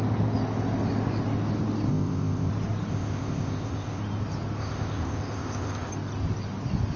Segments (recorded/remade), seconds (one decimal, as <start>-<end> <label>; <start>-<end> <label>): 0.0-1.9 recorded; 1.9-2.5 remade; 2.5-2.9 recorded; 2.9-4.0 remade; 4.0-4.6 recorded; 4.6-5.9 remade; 5.9-7.0 recorded